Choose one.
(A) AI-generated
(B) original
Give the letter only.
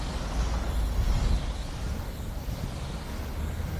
B